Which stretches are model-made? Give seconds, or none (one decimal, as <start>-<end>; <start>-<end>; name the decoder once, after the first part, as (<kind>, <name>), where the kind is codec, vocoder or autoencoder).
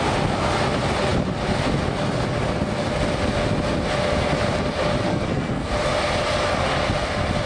5.1-5.7 (codec, SNAC)